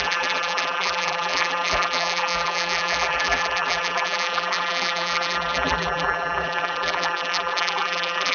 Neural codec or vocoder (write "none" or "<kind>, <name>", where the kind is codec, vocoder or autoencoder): vocoder, BigVGAN v2